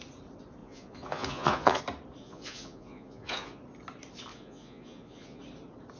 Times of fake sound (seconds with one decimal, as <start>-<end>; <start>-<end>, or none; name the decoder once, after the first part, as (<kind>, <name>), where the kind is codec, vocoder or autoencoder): 0.6-1.8 (vocoder, Vocos); 2.2-3.6; 4.3-5.4